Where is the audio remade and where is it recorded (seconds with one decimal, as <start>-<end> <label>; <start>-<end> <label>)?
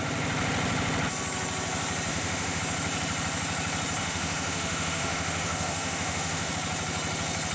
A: 0.0-2.1 recorded; 2.1-2.6 remade; 2.6-4.0 recorded; 4.0-6.5 remade; 6.5-7.5 recorded